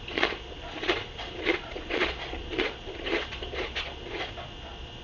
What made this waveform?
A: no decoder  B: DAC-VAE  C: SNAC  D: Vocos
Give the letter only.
D